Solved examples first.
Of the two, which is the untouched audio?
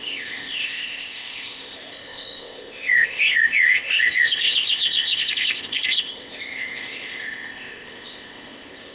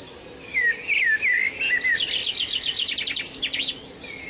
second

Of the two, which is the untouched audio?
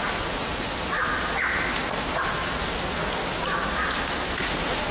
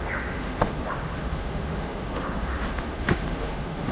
first